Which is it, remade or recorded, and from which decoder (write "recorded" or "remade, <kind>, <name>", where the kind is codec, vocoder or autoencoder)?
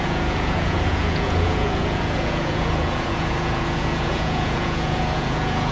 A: remade, vocoder, Vocos